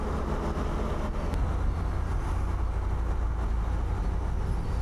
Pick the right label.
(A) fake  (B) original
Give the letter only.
B